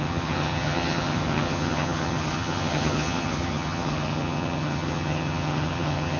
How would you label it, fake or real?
fake